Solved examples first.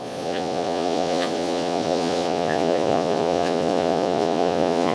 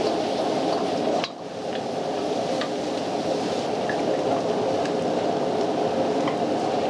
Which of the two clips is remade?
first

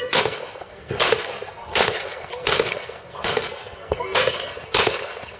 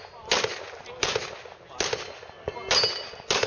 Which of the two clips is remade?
first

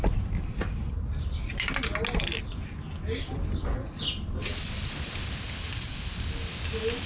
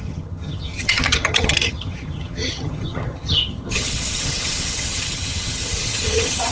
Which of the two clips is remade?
second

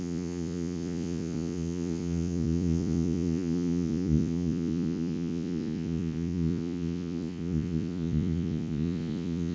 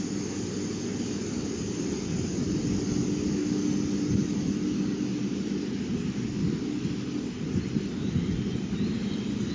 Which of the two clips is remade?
first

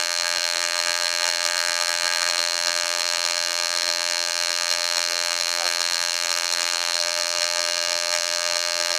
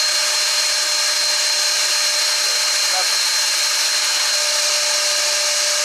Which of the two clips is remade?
first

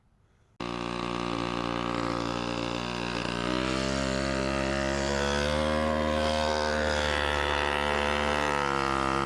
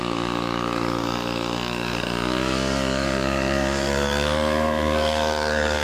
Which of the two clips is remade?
second